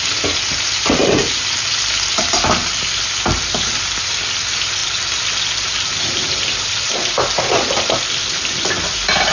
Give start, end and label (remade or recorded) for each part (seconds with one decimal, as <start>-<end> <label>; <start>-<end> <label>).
0.0-9.3 recorded